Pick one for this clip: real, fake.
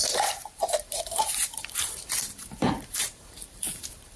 fake